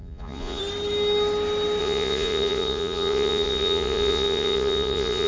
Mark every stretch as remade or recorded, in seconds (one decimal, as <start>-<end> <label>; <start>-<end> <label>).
0.0-0.6 remade; 0.6-1.8 recorded; 1.8-5.3 remade